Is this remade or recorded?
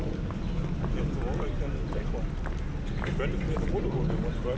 recorded